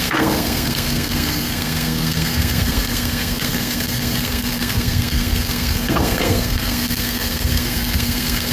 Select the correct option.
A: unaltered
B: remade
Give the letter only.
B